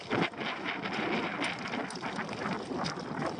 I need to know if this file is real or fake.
real